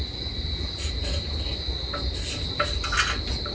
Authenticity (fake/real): real